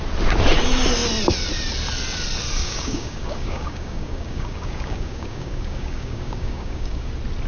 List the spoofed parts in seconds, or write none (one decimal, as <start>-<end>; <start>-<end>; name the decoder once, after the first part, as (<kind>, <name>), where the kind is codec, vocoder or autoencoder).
2.6-7.1 (codec, DAC)